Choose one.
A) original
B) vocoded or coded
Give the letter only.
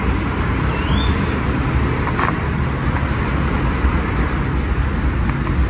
A